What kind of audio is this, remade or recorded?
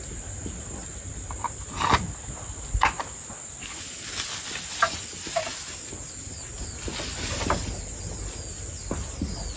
recorded